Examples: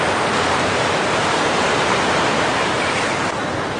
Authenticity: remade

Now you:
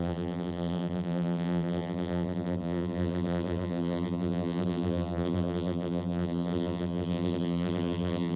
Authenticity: remade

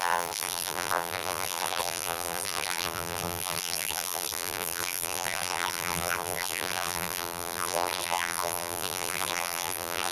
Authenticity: remade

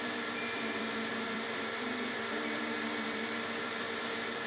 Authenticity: remade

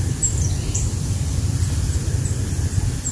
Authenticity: remade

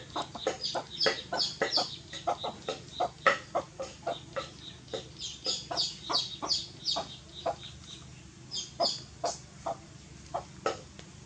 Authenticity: recorded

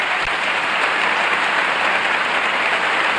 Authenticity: remade